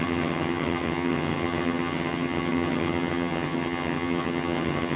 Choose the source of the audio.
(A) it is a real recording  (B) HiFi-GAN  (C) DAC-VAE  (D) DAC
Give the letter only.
B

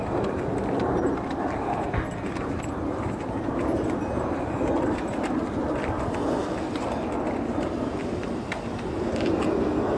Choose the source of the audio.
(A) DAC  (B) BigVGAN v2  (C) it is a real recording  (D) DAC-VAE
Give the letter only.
C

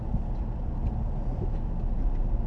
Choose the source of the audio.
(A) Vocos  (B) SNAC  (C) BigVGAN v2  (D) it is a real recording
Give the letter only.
D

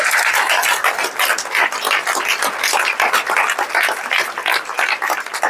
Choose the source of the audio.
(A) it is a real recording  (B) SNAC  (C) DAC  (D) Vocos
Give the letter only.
A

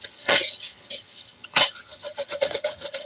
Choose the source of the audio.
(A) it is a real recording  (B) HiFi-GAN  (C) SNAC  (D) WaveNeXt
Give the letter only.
B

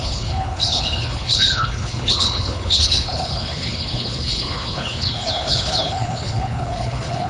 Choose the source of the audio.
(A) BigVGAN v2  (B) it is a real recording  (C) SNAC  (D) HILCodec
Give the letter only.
D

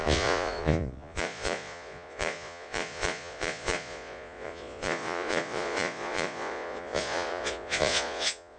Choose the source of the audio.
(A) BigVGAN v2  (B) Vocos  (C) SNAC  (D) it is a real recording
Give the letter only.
B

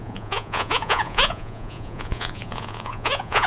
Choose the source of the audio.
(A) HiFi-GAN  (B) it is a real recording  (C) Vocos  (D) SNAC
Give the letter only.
C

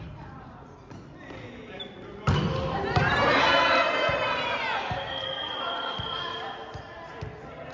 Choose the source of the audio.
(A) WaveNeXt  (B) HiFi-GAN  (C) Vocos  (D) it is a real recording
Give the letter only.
D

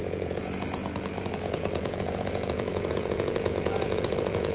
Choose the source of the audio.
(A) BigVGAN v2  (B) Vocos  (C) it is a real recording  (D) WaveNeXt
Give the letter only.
B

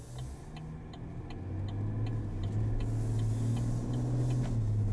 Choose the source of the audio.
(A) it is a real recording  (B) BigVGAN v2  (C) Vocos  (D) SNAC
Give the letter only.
A